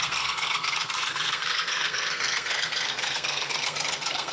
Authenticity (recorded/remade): remade